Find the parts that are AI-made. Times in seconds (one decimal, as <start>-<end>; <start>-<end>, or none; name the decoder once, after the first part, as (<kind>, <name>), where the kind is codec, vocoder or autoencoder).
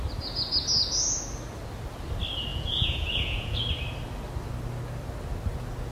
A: 2.5-3.6 (vocoder, Vocos)